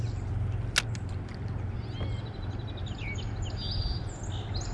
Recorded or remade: recorded